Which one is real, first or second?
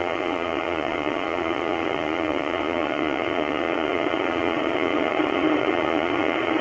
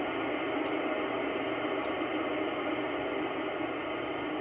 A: second